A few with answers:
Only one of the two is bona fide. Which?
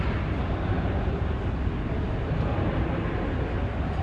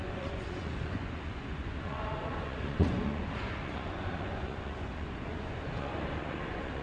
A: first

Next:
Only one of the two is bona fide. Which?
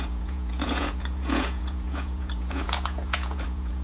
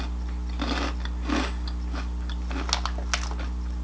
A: second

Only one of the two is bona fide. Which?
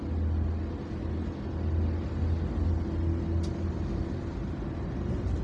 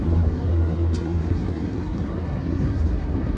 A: first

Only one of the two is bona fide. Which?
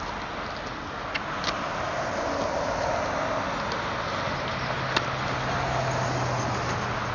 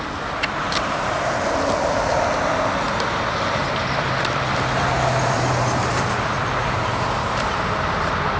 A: first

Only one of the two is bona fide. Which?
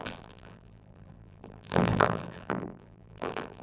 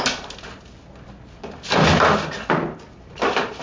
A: second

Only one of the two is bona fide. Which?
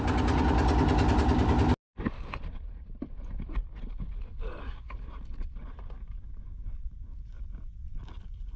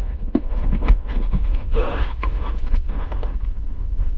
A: first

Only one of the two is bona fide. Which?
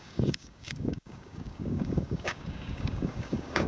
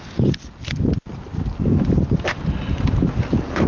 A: second